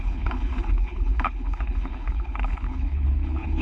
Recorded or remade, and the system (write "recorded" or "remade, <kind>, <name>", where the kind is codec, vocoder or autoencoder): remade, codec, HILCodec